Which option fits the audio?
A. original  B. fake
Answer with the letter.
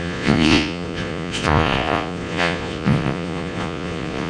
B